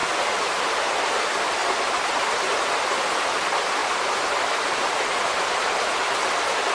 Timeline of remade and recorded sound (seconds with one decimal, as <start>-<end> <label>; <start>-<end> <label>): 0.0-1.6 recorded; 1.6-2.6 remade; 2.6-3.8 recorded; 3.8-6.2 remade; 6.2-6.7 recorded